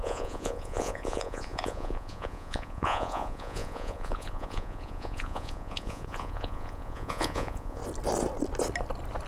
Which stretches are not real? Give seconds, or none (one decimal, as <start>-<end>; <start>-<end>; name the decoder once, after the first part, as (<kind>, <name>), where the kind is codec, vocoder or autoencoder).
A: 0.0-7.8 (vocoder, Vocos)